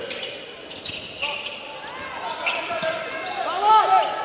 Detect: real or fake real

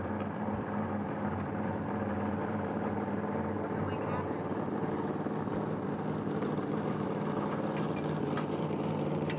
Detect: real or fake fake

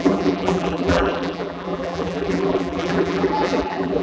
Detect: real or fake fake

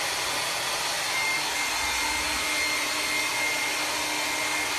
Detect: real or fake real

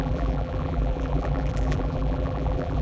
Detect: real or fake fake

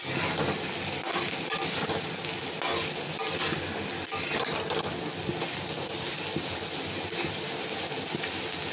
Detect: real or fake real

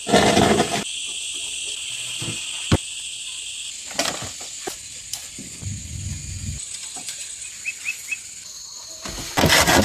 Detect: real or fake real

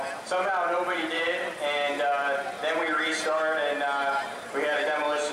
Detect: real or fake real